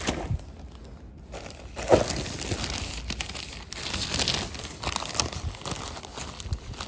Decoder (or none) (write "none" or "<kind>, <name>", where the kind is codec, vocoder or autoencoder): none